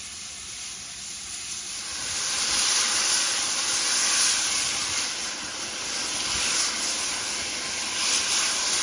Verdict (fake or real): fake